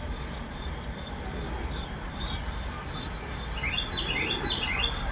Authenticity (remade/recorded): recorded